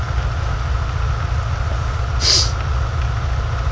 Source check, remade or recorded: recorded